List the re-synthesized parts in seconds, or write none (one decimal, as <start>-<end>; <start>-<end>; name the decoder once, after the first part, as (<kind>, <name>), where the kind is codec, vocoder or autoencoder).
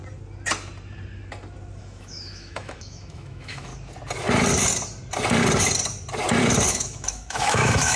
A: 1.8-3.7 (autoencoder, DAC-VAE); 6.7-8.0